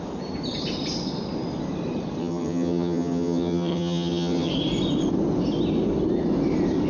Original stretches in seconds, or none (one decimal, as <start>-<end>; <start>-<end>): 0.0-2.2; 4.5-6.9